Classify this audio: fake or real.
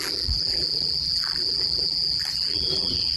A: fake